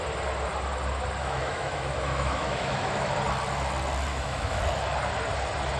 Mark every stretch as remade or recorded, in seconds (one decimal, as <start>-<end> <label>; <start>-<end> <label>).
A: 0.0-1.2 recorded; 1.2-3.1 remade; 3.1-4.1 recorded; 4.1-4.6 remade; 4.6-5.8 recorded